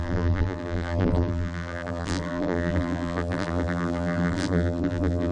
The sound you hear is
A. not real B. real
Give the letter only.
A